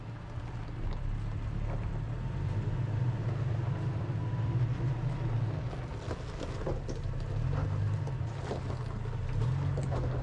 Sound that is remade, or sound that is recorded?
recorded